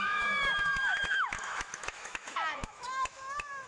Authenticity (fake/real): fake